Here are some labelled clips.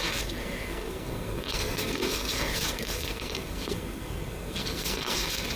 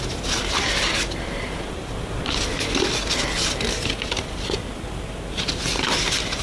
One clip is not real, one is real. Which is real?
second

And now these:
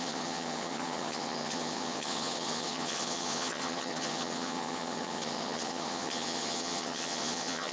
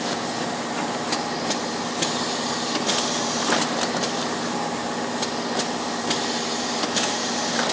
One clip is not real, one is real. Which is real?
second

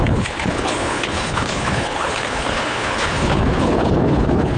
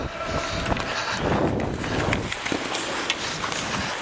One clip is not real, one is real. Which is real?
second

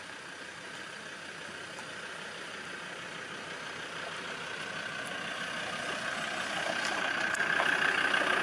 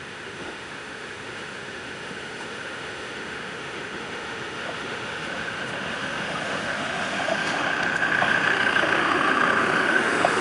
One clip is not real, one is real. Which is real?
first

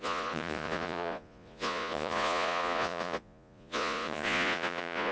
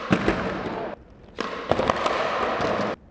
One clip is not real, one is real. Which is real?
second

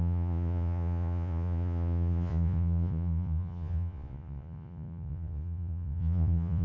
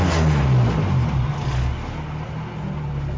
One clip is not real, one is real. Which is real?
second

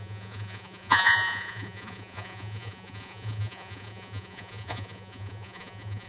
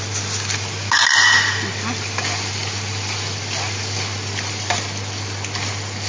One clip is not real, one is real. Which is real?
second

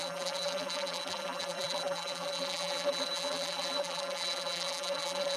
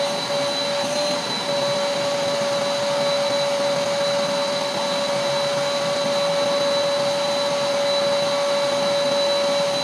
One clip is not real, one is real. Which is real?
second